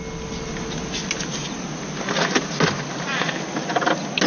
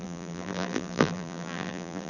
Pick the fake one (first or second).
second